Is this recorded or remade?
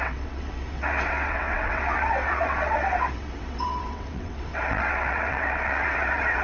remade